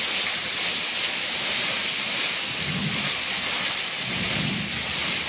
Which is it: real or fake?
real